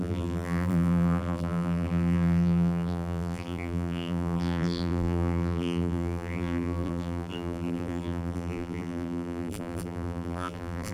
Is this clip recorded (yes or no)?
no